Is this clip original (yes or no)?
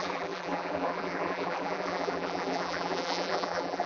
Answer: no